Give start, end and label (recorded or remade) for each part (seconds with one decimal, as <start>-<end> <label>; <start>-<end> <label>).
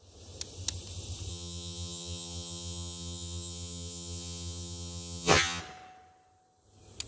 0.0-1.3 recorded; 1.3-5.6 remade; 5.6-7.1 recorded